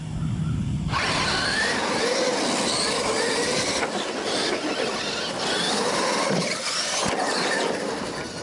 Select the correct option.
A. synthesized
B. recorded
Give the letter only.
B